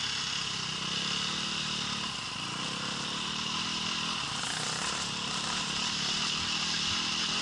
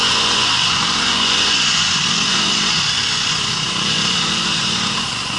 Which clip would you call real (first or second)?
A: first